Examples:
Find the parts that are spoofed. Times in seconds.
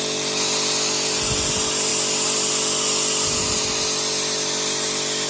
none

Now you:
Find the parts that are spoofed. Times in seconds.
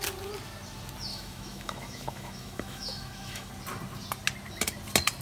1.1-3.5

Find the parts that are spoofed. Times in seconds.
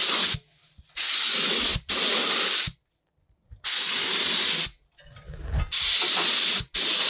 none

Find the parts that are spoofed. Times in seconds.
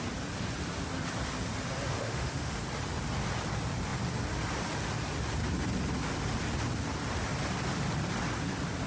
1.9-2.5